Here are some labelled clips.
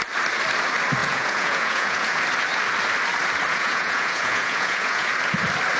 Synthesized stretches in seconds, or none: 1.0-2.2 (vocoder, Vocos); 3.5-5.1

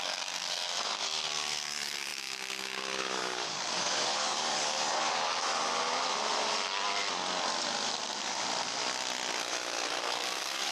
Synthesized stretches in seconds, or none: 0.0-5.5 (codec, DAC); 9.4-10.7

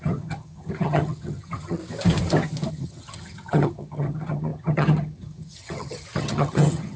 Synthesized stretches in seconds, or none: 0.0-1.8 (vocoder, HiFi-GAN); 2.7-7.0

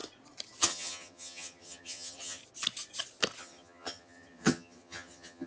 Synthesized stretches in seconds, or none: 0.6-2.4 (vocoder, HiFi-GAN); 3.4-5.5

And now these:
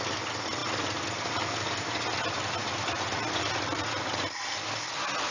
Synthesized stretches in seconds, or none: none

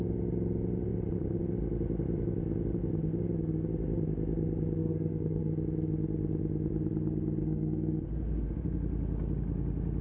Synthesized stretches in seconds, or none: 4.8-5.5 (codec, SNAC); 7.4-8.0